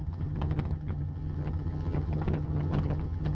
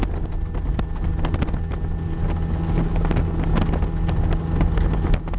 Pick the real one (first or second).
second